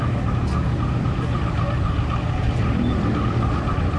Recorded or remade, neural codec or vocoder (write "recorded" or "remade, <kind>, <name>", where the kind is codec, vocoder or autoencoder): recorded